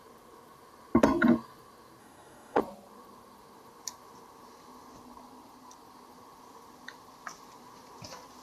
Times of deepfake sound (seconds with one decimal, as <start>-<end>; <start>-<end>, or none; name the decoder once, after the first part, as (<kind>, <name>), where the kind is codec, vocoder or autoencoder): 2.0-2.6 (codec, DAC)